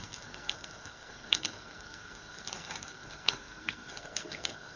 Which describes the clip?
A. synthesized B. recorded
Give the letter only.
A